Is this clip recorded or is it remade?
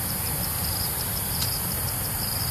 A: recorded